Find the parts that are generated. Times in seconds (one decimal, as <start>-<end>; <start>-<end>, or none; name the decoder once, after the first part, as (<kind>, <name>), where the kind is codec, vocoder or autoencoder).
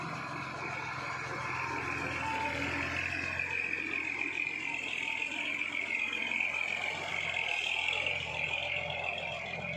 none